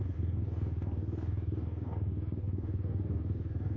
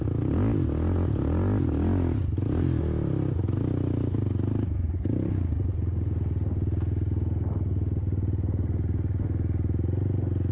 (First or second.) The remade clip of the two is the first